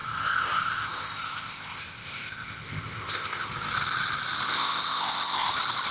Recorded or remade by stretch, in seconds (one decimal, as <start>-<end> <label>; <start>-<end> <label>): 0.0-3.5 remade; 3.5-4.5 recorded; 4.5-5.5 remade; 5.5-5.9 recorded